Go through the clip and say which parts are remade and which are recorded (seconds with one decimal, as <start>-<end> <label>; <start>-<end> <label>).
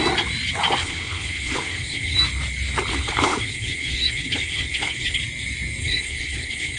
0.0-0.8 recorded; 0.8-2.2 remade; 2.2-2.9 recorded; 2.9-5.2 remade; 5.2-5.8 recorded; 5.8-6.8 remade